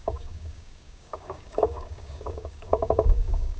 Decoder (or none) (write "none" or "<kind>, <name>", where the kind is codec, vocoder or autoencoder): codec, DAC